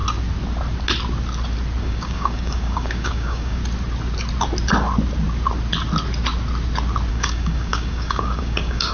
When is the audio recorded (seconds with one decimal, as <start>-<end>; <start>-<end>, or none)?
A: 0.0-1.8; 3.6-7.1